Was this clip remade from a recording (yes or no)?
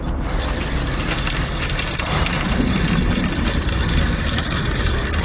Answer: no